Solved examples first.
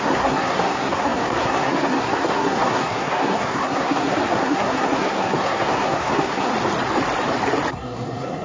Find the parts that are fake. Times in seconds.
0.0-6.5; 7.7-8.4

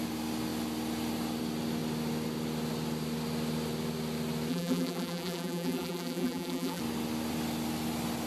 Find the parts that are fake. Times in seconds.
4.5-6.8

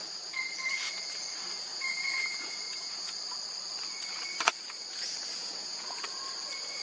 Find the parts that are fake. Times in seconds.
1.7-3.1; 5.4-6.0